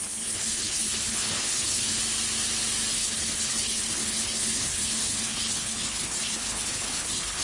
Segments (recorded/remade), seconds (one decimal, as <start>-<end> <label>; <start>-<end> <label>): 0.0-2.0 remade; 2.0-2.9 recorded; 2.9-7.4 remade